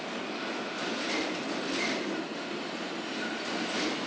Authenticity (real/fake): real